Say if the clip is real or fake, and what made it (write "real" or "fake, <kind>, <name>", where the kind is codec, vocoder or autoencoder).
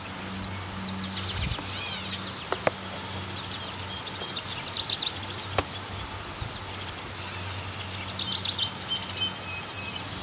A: real